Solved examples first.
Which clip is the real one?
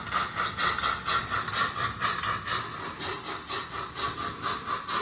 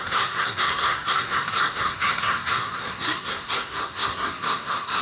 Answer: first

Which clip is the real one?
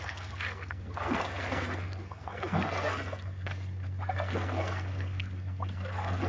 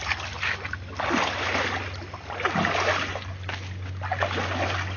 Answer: second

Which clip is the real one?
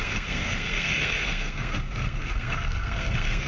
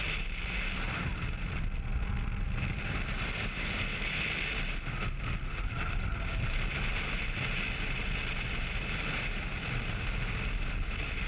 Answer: second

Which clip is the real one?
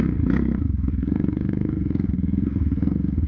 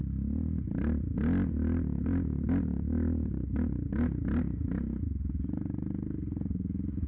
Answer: second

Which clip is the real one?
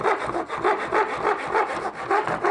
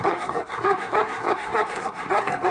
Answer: first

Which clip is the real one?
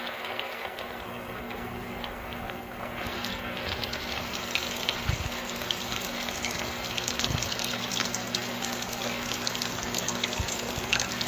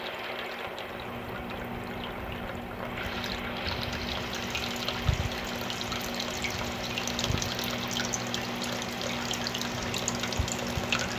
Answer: second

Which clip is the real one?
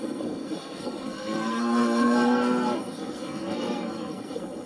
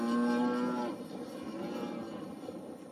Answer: second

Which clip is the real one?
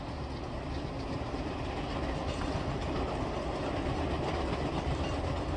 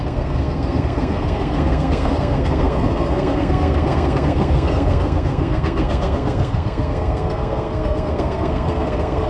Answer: first